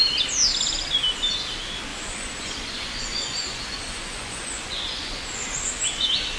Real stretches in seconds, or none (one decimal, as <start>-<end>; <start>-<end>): 0.0-1.9; 5.7-6.4